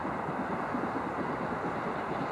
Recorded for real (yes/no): yes